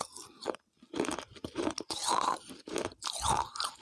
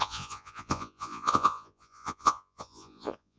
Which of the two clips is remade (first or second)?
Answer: second